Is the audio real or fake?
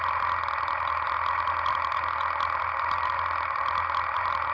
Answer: real